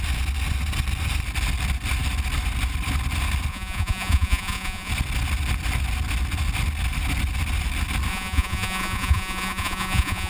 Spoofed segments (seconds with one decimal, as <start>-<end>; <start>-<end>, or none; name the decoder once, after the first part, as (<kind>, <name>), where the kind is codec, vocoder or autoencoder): 3.5-4.9 (vocoder, Vocos); 8.1-10.3